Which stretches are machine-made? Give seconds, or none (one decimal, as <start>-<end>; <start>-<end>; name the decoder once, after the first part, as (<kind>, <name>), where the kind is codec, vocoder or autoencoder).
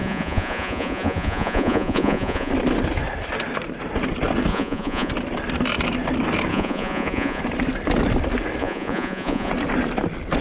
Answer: 0.0-2.5 (vocoder, Vocos); 4.5-5.1; 6.5-7.4; 8.6-9.5